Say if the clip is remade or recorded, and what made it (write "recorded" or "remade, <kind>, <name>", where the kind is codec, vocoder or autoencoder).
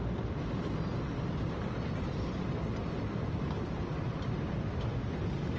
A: recorded